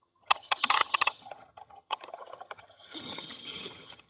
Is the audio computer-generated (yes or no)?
yes